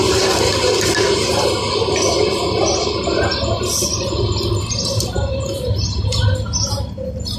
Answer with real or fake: real